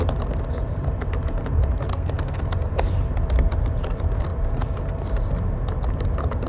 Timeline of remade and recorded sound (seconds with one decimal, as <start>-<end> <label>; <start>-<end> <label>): 0.0-1.9 recorded; 1.9-2.4 remade; 2.4-6.5 recorded